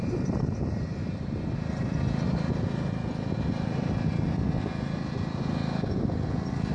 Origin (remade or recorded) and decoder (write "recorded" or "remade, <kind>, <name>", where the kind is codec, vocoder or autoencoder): recorded